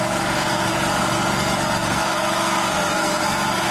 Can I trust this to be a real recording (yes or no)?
no